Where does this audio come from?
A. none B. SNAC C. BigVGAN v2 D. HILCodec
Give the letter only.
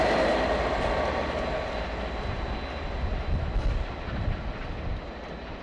A